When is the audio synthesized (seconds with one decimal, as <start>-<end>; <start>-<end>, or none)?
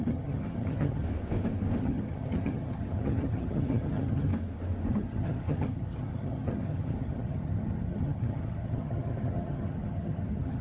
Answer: 0.0-1.0; 1.8-4.3; 4.9-10.6